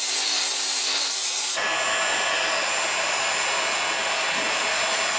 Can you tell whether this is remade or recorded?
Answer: recorded